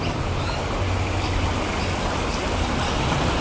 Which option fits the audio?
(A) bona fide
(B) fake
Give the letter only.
A